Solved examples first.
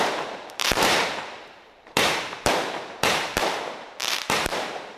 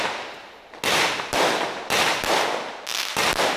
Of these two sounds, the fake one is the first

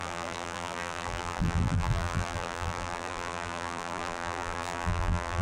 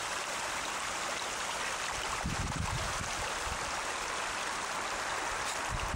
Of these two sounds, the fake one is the first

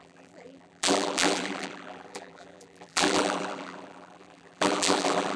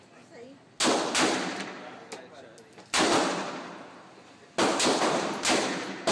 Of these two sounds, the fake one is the first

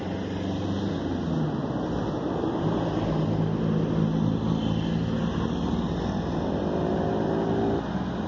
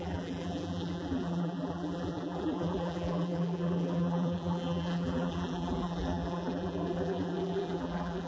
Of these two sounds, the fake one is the second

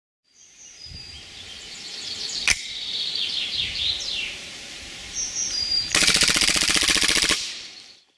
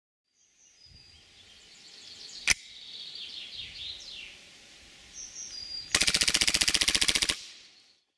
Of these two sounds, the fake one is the first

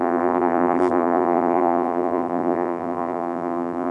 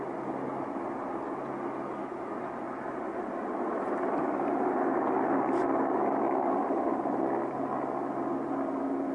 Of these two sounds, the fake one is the first